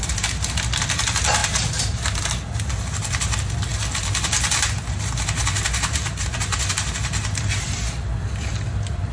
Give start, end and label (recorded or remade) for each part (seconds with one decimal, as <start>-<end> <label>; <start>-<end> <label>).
0.0-9.1 recorded